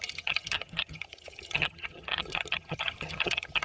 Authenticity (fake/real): fake